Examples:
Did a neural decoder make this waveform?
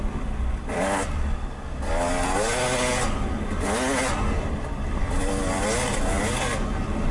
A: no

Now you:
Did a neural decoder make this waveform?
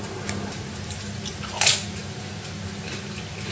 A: no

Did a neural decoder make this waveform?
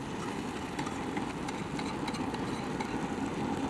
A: no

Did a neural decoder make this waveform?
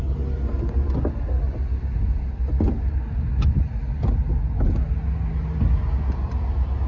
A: no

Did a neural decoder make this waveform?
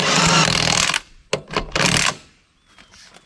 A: no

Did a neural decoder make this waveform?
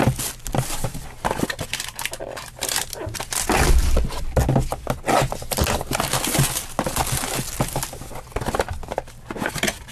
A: no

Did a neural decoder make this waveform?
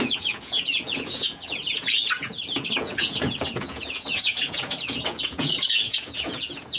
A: yes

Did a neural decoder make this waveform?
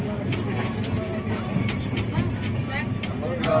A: no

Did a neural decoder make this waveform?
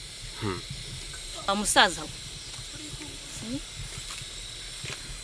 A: no